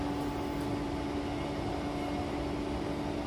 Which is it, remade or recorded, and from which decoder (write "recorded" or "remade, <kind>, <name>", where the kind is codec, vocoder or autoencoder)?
recorded